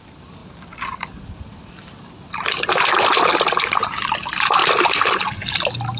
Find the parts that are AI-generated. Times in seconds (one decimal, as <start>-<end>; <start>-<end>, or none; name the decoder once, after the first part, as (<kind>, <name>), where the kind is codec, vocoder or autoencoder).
none